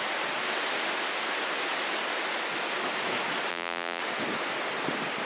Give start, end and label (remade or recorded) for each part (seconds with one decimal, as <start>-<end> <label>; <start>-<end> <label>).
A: 0.0-3.5 recorded; 3.5-4.0 remade; 4.0-5.3 recorded